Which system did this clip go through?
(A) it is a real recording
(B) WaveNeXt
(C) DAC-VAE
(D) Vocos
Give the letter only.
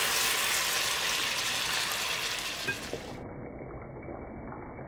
A